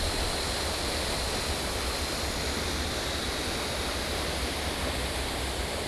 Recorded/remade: recorded